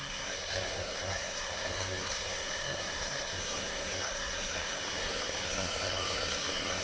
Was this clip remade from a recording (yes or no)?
yes